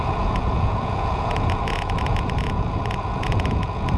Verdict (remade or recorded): remade